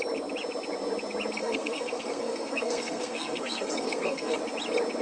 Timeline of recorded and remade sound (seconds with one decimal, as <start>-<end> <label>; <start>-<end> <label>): 0.0-1.4 recorded; 1.4-4.4 remade; 4.4-5.0 recorded